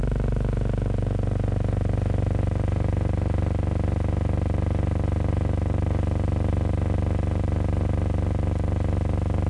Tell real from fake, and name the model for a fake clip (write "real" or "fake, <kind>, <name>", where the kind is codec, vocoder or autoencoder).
real